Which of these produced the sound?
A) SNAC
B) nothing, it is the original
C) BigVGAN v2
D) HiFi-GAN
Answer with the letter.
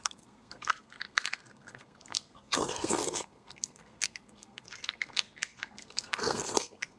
A